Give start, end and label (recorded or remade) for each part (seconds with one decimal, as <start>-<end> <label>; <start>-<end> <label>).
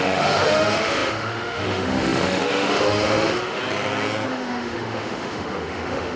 0.0-3.6 remade; 3.6-4.3 recorded; 4.3-6.2 remade